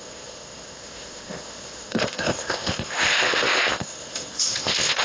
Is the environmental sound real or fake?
fake